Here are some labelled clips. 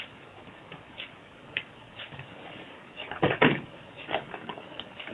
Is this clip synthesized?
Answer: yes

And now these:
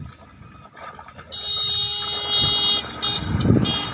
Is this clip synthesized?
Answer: no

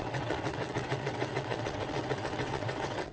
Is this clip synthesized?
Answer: yes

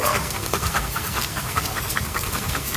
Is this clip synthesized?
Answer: yes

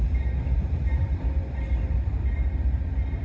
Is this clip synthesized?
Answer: yes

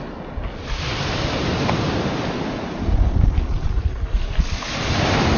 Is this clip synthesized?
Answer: no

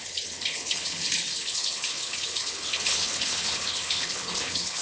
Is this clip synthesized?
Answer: yes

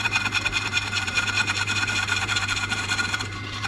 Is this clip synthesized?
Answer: yes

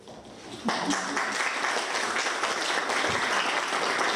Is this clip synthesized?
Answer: no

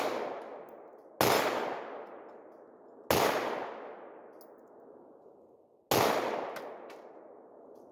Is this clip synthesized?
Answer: no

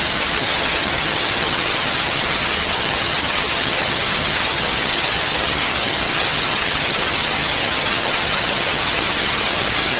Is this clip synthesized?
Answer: yes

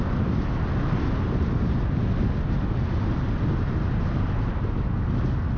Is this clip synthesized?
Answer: no